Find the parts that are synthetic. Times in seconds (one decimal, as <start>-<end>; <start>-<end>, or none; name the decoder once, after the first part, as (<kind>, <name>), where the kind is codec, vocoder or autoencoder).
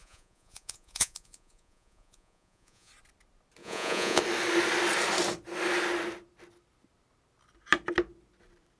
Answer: 0.0-2.9 (vocoder, Vocos); 3.6-4.2